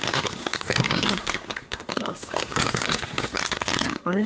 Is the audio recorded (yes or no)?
no